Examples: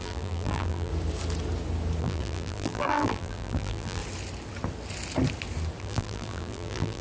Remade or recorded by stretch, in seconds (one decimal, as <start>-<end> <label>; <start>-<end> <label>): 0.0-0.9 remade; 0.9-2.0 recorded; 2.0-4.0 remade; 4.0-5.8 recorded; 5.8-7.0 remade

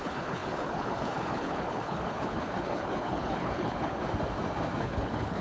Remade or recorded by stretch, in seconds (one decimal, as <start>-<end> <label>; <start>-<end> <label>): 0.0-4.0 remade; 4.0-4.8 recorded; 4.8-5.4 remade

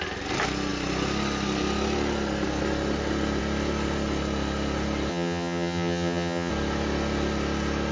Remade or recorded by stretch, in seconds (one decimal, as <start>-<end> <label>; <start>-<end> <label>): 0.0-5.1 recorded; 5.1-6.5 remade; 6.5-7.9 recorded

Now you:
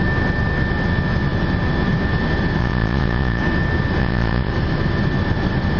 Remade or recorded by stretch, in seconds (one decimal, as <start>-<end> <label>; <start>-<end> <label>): 0.0-2.6 recorded; 2.6-3.4 remade; 3.4-4.0 recorded; 4.0-4.5 remade; 4.5-5.8 recorded

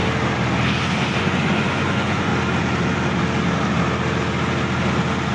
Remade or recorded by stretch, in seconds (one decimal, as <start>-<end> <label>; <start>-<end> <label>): 0.0-1.2 recorded; 1.2-2.3 remade; 2.3-5.3 recorded

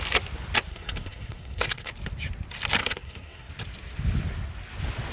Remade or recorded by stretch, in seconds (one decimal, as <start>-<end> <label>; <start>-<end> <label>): 0.0-0.7 recorded; 0.7-1.9 remade; 1.9-2.8 recorded; 2.8-3.5 remade; 3.5-5.1 recorded

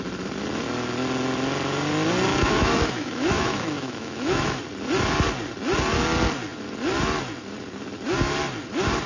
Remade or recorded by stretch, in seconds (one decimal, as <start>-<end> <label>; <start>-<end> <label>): 0.0-2.3 recorded; 2.3-4.6 remade; 4.6-9.1 recorded

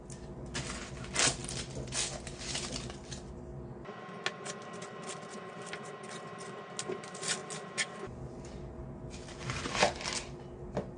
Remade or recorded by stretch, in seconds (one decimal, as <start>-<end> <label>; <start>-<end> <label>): 0.0-11.0 recorded